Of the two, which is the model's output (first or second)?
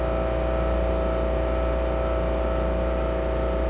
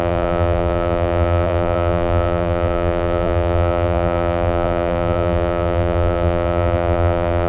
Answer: second